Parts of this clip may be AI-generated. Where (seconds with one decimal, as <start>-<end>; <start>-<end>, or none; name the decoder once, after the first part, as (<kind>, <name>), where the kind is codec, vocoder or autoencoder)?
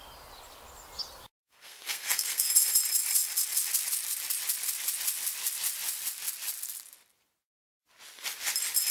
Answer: 1.4-2.5 (codec, SNAC)